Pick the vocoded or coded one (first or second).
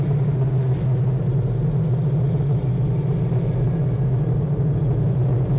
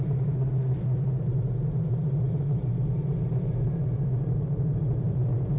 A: second